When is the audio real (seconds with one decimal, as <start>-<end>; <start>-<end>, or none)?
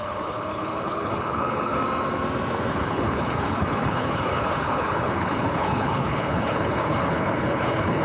1.8-2.7